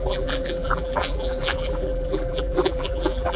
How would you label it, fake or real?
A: fake